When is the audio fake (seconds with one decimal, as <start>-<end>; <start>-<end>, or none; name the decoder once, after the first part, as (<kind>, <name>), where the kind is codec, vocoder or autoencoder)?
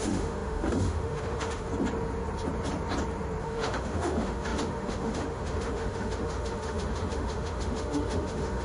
0.0-1.7 (autoencoder, DAC-VAE); 3.4-8.6